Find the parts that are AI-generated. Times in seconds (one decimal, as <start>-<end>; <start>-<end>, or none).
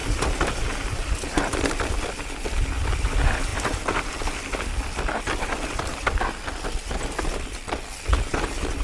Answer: none